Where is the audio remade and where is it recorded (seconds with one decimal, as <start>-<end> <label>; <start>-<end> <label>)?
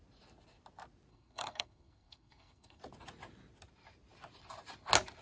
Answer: 0.0-1.1 recorded; 1.1-2.8 remade; 2.8-5.2 recorded